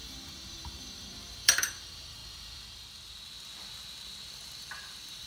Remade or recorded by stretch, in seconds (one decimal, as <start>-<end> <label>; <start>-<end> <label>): 0.0-2.2 remade; 2.2-4.3 recorded; 4.3-5.3 remade